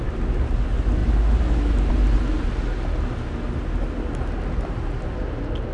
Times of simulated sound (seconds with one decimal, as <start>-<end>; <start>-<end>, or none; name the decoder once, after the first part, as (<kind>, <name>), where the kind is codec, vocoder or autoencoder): none